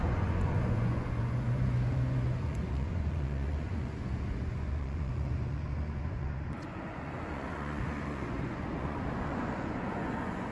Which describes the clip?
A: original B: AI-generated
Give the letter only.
B